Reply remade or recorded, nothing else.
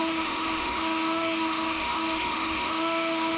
remade